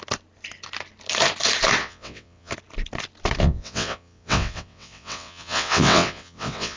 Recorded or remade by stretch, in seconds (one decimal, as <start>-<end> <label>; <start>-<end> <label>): 0.0-1.8 recorded; 1.8-2.5 remade; 2.5-3.4 recorded; 3.4-6.8 remade

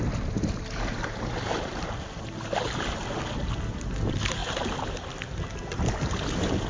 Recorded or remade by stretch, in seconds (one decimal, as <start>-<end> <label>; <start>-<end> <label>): 0.0-6.7 recorded

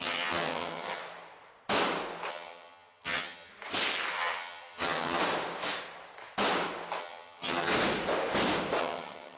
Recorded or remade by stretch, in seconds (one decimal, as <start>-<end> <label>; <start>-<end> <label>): 0.0-1.0 remade; 1.0-2.3 recorded; 2.3-3.5 remade; 3.5-4.1 recorded; 4.1-5.2 remade; 5.2-7.0 recorded; 7.0-7.7 remade; 7.7-8.8 recorded; 8.8-9.4 remade

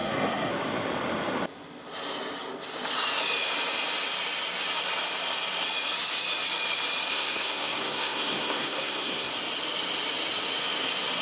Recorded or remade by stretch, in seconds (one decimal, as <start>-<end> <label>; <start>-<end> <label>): 0.0-0.5 remade; 0.5-7.1 recorded; 7.1-9.3 remade; 9.3-11.2 recorded